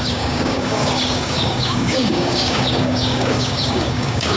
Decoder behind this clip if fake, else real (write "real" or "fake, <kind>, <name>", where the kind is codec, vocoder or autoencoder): fake, codec, DAC